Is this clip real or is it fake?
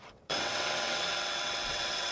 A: fake